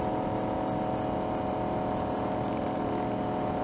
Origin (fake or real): real